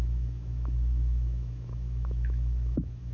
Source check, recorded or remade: remade